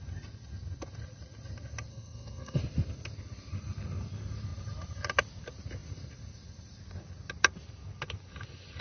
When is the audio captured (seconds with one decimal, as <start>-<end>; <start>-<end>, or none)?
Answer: 0.0-1.9; 2.6-8.8